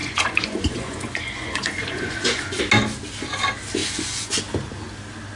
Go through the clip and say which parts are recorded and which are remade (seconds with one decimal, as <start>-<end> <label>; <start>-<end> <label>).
0.0-2.6 remade; 2.6-3.8 recorded; 3.8-4.4 remade; 4.4-5.4 recorded